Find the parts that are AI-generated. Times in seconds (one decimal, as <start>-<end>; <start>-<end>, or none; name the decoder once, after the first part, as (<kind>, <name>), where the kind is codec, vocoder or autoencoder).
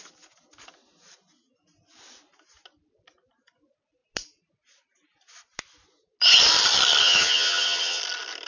7.0-8.0 (vocoder, HiFi-GAN)